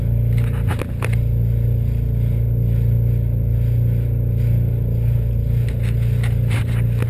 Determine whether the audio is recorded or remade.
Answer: recorded